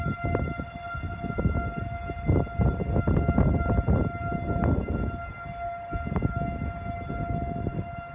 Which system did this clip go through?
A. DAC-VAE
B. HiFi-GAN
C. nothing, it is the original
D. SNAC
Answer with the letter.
C